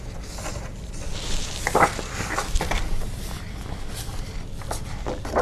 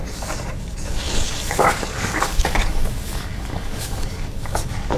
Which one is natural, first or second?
first